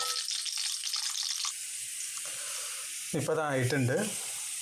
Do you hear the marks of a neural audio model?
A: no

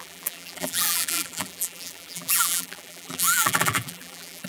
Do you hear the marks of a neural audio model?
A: yes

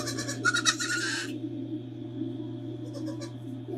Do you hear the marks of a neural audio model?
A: no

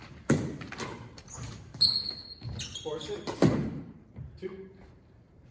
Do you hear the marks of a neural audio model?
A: yes